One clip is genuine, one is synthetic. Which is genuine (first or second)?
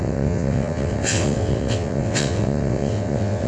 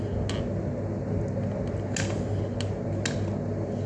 second